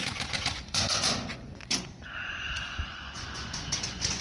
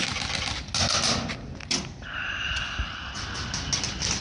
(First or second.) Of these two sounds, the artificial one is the first